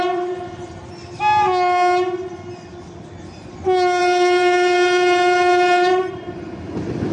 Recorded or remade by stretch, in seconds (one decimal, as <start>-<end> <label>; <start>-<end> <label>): 0.0-4.0 recorded; 4.0-7.1 remade